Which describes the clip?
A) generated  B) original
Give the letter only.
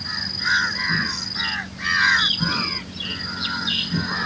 B